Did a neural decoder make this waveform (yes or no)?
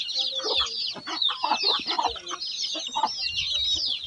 no